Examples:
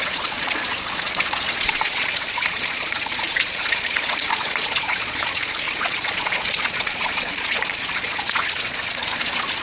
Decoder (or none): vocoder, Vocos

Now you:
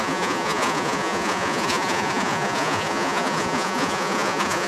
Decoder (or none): vocoder, Vocos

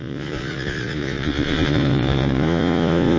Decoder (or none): vocoder, Vocos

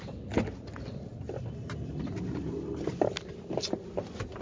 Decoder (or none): none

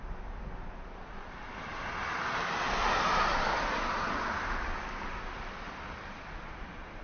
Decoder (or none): none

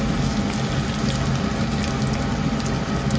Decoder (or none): none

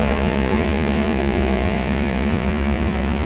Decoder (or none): vocoder, Vocos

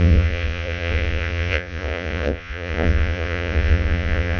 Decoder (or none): vocoder, Vocos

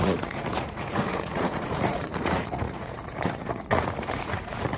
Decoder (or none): vocoder, Vocos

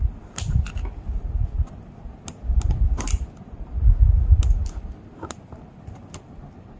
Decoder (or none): none